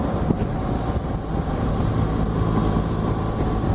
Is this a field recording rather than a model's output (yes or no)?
yes